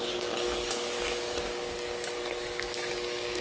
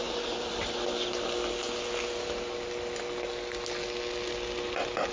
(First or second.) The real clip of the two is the second